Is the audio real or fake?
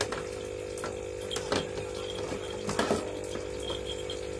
real